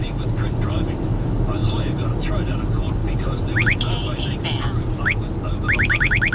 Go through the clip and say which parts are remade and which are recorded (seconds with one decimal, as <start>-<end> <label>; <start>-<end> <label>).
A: 0.0-6.3 recorded